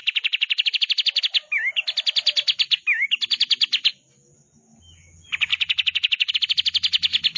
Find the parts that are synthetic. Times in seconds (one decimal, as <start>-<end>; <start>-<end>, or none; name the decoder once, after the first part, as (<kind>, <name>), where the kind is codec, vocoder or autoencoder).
5.5-6.3 (autoencoder, DAC-VAE)